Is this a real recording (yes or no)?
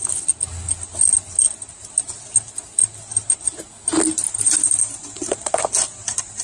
yes